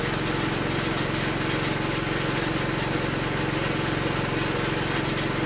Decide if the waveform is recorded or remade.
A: recorded